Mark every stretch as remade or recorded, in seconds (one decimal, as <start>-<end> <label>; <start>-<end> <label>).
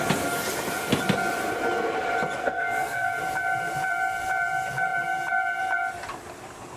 0.0-2.4 recorded; 2.4-3.2 remade; 3.2-6.8 recorded